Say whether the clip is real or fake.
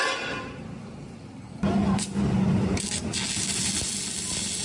real